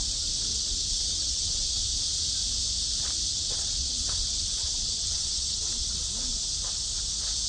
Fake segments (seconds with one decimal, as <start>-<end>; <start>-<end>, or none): 0.5-1.8; 3.3-6.0